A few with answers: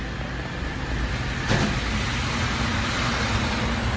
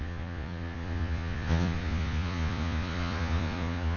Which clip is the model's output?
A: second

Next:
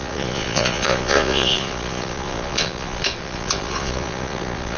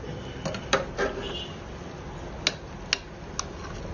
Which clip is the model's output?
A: first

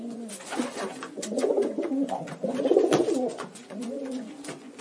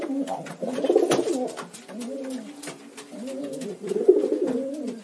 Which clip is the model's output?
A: first